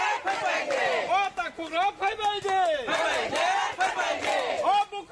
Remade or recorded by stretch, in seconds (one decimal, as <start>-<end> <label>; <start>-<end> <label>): 0.0-5.1 recorded